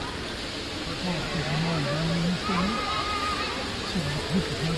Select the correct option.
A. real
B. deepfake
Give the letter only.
A